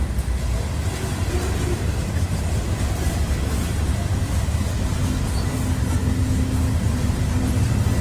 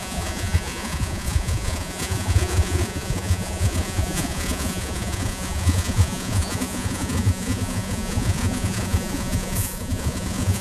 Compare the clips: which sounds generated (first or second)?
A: second